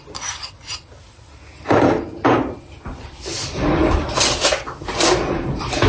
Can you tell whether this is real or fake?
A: real